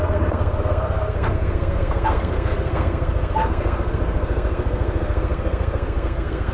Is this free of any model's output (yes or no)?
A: no